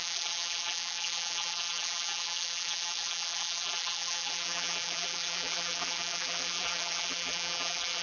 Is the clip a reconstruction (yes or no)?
yes